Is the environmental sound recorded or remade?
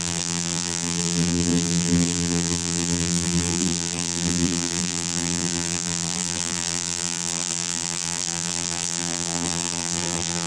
remade